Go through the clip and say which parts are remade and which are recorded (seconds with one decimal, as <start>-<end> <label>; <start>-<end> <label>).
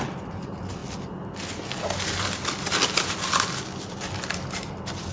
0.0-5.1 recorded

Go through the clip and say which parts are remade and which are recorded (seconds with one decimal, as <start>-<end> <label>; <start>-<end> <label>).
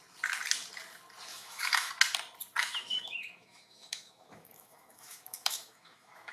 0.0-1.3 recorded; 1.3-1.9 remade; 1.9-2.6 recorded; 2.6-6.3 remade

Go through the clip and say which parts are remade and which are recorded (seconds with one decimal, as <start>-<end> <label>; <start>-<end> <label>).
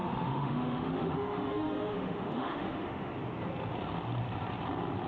0.0-3.1 remade; 3.1-5.1 recorded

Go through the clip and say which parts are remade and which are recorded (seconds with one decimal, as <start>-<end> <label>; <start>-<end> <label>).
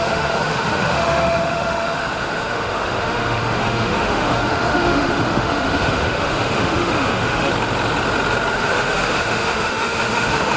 0.0-7.5 remade; 7.5-8.5 recorded; 8.5-10.6 remade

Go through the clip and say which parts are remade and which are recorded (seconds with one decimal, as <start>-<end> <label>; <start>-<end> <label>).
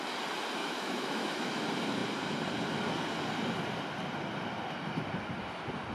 0.0-0.6 recorded; 0.6-1.6 remade; 1.6-5.9 recorded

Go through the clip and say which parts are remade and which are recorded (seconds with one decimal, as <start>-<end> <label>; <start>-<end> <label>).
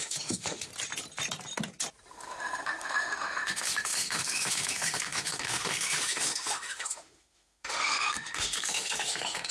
0.0-0.7 remade; 0.7-2.1 recorded; 2.1-9.5 remade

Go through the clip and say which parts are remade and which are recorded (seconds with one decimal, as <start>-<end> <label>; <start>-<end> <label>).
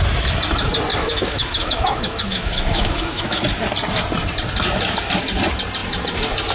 0.0-0.9 recorded; 0.9-3.4 remade; 3.4-6.5 recorded